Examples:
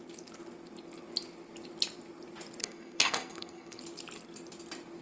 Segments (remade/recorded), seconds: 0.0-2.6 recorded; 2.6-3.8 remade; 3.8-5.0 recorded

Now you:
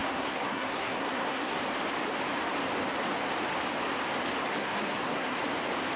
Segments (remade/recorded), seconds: 0.0-1.6 remade; 1.6-4.5 recorded; 4.5-5.4 remade; 5.4-6.0 recorded

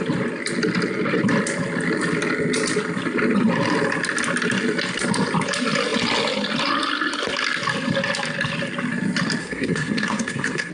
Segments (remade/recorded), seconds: 0.0-9.4 recorded; 9.4-10.7 remade

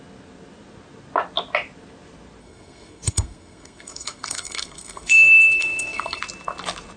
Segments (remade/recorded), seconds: 0.0-2.4 recorded; 2.4-6.2 remade; 6.2-7.0 recorded

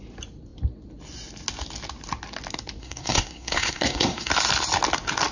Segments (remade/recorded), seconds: 0.0-2.8 recorded; 2.8-4.3 remade; 4.3-5.3 recorded

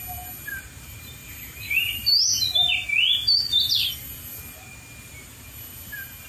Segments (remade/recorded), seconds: 0.0-6.3 recorded

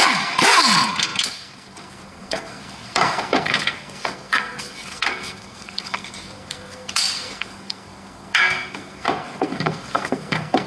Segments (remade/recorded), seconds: 0.0-10.7 remade